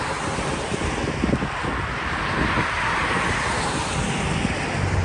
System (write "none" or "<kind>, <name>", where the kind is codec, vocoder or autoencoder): none